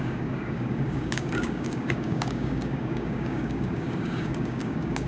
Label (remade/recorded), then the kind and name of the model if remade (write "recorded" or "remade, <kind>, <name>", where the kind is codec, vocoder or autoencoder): remade, codec, DAC